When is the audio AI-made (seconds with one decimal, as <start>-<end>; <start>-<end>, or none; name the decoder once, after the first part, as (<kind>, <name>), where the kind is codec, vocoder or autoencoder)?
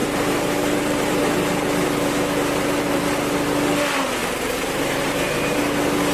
0.0-1.2 (vocoder, BigVGAN v2); 4.2-5.6